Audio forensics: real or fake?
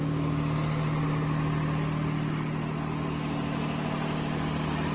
real